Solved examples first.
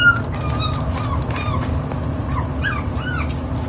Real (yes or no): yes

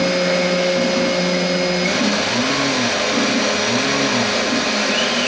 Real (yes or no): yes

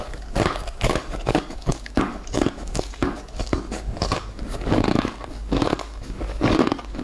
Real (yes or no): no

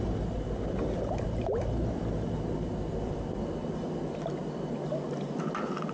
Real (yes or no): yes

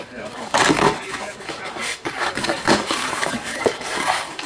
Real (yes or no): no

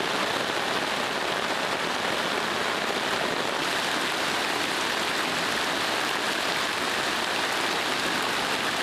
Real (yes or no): yes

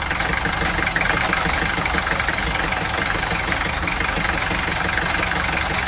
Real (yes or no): yes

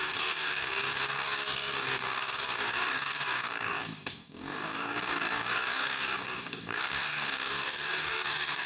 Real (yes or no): no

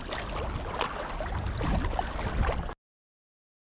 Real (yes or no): yes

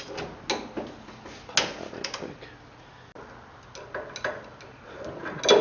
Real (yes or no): yes